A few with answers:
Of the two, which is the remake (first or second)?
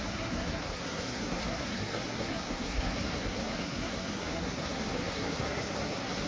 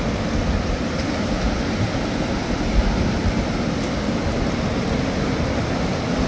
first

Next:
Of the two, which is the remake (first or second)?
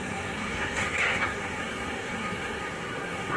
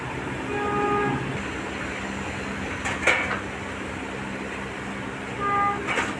first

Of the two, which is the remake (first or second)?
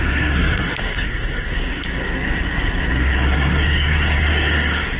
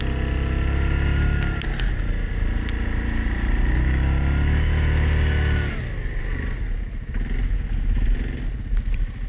first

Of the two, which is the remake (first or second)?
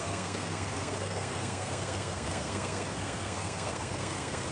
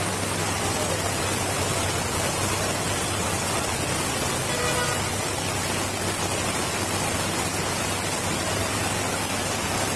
first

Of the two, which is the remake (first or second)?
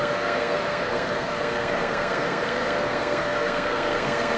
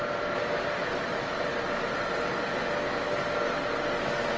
first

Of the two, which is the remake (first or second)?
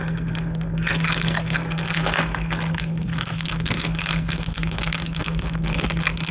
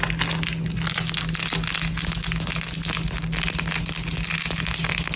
first